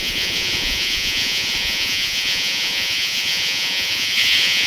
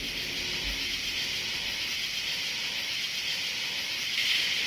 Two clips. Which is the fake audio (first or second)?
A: first